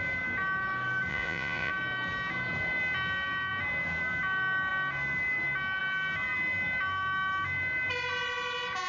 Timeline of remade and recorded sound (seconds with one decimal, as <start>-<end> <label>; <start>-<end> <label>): 0.0-1.1 recorded; 1.1-1.7 remade; 1.7-8.9 recorded